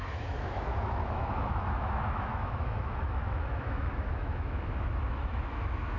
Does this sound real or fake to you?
fake